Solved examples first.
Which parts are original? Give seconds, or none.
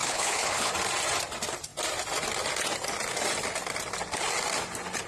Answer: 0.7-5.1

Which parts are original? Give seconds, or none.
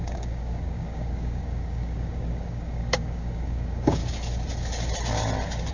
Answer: 4.0-5.7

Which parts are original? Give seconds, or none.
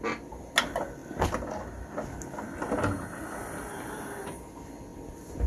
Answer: 0.0-5.5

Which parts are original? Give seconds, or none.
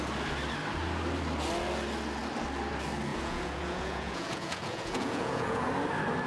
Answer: 0.0-3.1; 5.7-6.3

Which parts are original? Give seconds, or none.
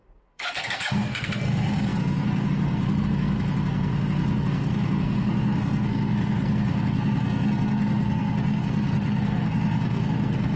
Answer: none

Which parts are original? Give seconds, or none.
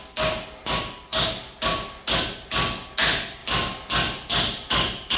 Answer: 0.0-5.2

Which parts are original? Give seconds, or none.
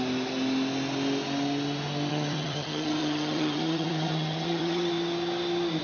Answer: 0.0-2.1; 4.9-5.8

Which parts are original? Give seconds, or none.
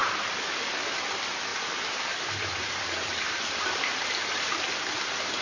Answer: 0.0-1.5; 4.7-5.4